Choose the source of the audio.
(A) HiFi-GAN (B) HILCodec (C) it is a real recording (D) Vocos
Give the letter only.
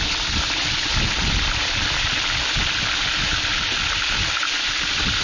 C